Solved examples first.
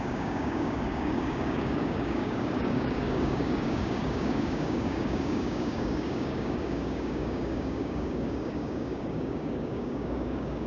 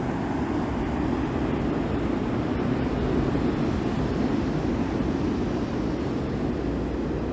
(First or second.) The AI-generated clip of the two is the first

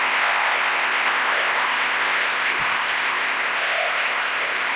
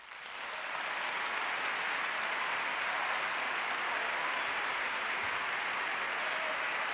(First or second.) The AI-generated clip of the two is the first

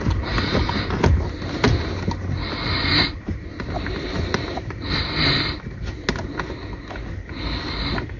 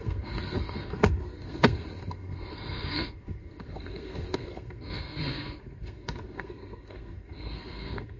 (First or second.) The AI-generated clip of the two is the second